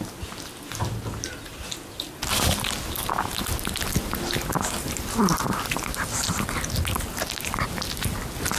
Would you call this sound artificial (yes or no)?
no